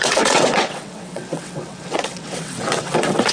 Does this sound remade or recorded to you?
remade